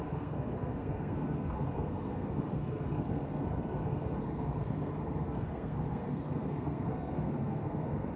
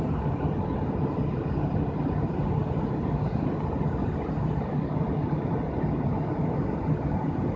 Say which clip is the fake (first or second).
first